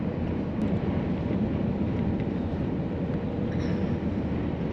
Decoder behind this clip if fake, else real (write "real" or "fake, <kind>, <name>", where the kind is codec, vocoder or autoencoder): fake, vocoder, BigVGAN v2